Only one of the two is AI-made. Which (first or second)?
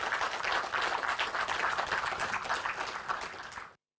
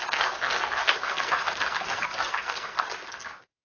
second